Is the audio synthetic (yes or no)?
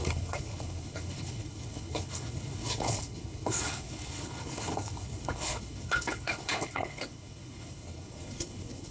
yes